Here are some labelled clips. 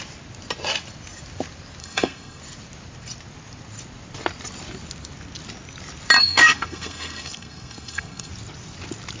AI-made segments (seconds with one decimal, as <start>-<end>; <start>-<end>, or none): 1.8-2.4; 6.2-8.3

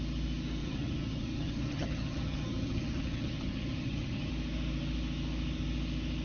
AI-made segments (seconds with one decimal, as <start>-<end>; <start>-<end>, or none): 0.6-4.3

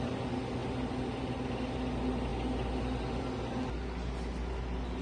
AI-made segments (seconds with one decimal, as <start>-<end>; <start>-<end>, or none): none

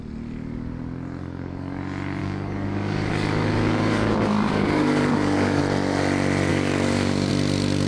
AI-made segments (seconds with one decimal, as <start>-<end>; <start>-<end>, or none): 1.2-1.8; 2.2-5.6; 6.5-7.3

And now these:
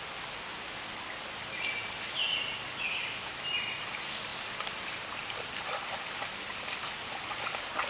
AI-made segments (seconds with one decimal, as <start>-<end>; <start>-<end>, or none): none

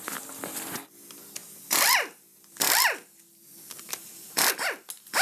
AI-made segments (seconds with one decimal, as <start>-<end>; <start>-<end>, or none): none

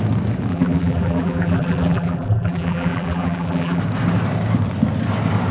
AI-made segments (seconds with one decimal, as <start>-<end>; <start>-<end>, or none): 0.5-3.8